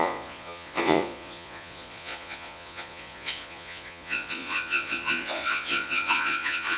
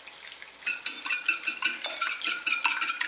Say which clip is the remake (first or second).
first